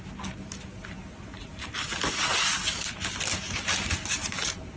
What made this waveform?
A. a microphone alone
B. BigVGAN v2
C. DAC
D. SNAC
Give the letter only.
A